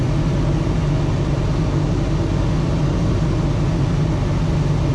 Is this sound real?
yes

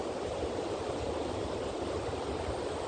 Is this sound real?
yes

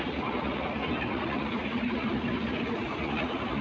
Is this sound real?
no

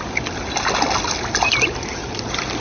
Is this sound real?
yes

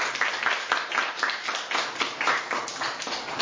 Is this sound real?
yes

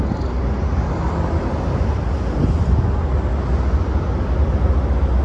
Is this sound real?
yes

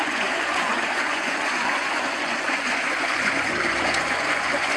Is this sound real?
no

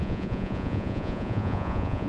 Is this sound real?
no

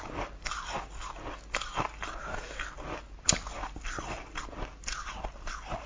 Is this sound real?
yes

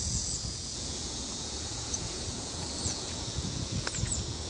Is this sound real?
no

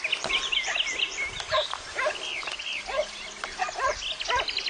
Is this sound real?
yes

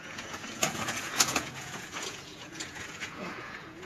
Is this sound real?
no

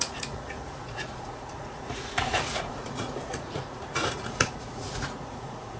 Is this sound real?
no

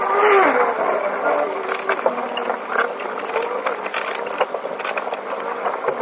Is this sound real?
yes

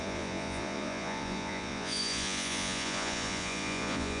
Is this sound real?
no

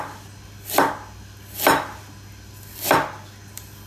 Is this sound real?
yes